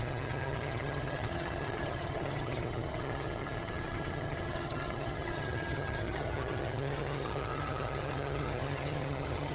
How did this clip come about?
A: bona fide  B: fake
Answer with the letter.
B